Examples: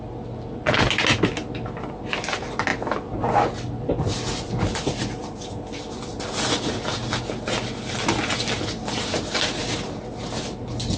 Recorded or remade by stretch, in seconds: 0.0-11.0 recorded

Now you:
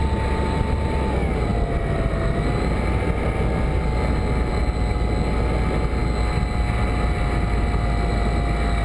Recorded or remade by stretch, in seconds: 0.0-8.8 recorded

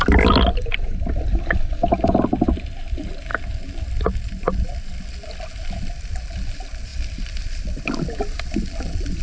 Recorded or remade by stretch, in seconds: 0.0-3.3 remade; 3.3-5.3 recorded; 5.3-9.2 remade

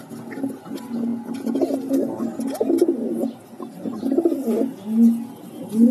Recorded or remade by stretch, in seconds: 0.0-5.9 recorded

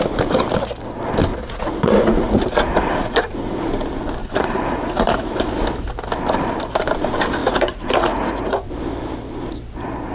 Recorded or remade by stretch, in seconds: 0.0-1.3 recorded; 1.3-3.7 remade; 3.7-4.2 recorded; 4.2-5.5 remade; 5.5-7.4 recorded; 7.4-8.7 remade; 8.7-10.1 recorded

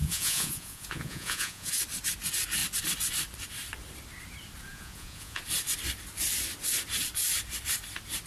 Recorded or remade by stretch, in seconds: 0.0-1.7 remade; 1.7-4.7 recorded; 4.7-5.4 remade; 5.4-8.3 recorded

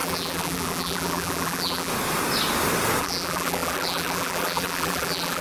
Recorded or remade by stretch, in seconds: 0.0-1.9 remade; 1.9-3.0 recorded; 3.0-5.4 remade